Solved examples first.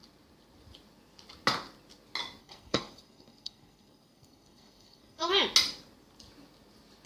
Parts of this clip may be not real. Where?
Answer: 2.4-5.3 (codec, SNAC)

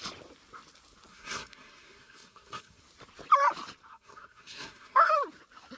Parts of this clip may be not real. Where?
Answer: 1.1-2.8 (codec, SNAC); 3.9-5.1

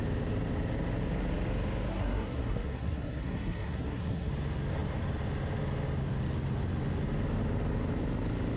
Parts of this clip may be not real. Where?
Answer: 1.9-4.3 (codec, SNAC)

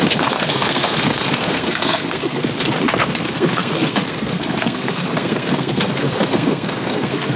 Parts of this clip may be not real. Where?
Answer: 0.0-2.4 (codec, SNAC); 3.0-7.4

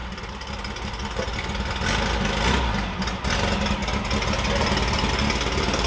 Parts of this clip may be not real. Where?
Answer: none

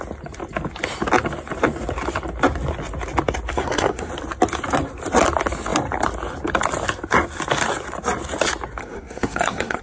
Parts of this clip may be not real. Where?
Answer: 3.5-4.1 (codec, SNAC); 8.8-9.8

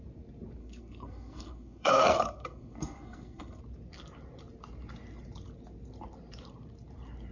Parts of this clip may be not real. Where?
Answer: 0.6-3.6 (codec, SNAC)